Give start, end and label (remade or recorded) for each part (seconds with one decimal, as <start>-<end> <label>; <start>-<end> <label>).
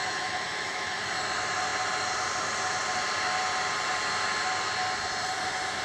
0.0-1.1 remade; 1.1-5.8 recorded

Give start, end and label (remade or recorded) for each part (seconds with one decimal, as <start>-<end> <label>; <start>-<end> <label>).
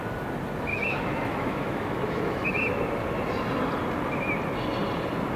0.0-0.7 recorded; 0.7-2.8 remade; 2.8-5.4 recorded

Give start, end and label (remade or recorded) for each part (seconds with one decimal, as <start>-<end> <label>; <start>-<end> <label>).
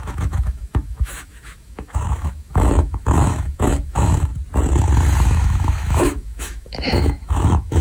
0.0-4.3 remade; 4.3-5.2 recorded; 5.2-7.8 remade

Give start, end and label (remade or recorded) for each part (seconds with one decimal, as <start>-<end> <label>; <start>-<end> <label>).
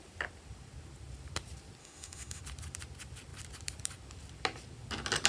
0.0-1.8 recorded; 1.8-2.4 remade; 2.4-5.3 recorded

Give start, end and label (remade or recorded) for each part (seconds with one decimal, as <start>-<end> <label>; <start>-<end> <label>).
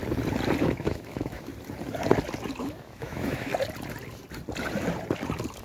0.0-0.6 recorded; 0.6-1.5 remade; 1.5-2.6 recorded; 2.6-3.5 remade; 3.5-5.6 recorded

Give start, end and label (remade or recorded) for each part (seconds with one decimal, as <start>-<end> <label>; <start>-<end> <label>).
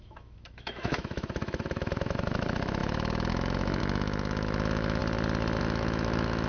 0.0-5.0 remade; 5.0-5.6 recorded; 5.6-6.5 remade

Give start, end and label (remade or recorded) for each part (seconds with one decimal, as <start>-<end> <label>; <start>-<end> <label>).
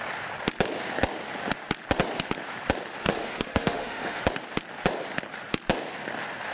0.0-3.0 recorded; 3.0-4.2 remade; 4.2-6.5 recorded